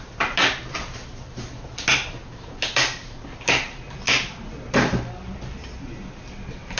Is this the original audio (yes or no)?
yes